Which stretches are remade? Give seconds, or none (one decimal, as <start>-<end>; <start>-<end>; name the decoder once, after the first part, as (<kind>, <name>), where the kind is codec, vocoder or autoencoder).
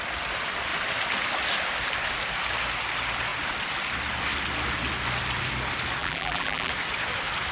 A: 6.0-6.7 (vocoder, BigVGAN v2)